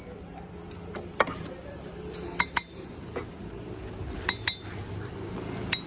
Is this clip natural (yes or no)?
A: yes